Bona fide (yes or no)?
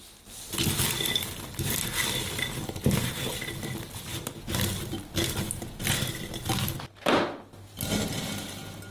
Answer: yes